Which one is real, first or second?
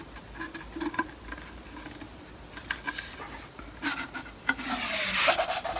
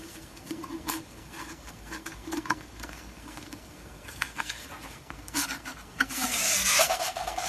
first